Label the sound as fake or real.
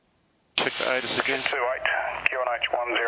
real